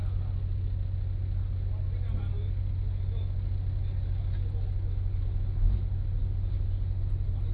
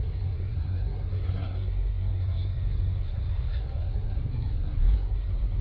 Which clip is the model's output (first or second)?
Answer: second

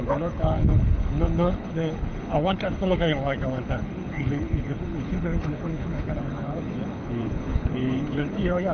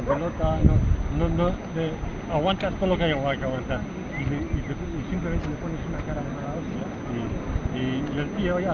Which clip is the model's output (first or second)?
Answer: first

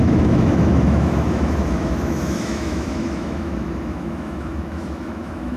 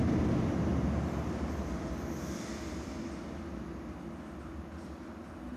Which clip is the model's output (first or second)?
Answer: first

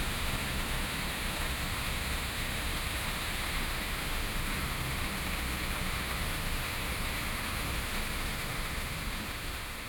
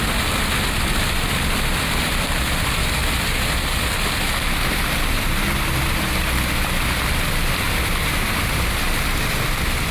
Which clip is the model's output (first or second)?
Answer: first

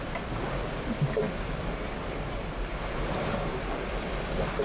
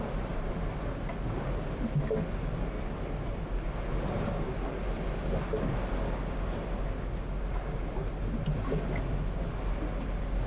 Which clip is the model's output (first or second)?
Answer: first